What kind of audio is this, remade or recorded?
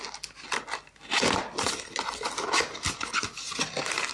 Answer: recorded